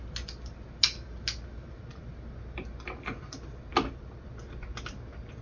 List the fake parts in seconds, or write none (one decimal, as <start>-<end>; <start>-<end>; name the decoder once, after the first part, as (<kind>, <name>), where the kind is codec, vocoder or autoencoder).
none